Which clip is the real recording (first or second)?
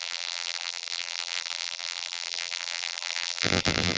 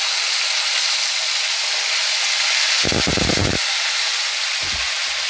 second